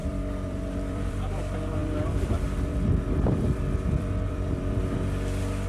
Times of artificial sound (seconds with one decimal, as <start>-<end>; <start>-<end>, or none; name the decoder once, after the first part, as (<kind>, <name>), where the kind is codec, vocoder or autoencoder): 0.0-1.3 (vocoder, BigVGAN v2); 1.8-4.8